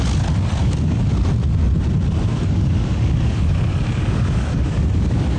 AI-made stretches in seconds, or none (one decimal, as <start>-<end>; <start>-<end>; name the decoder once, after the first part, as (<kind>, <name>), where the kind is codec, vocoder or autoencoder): 0.6-1.1 (codec, DAC); 2.3-5.4